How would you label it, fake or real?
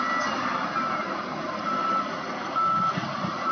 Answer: real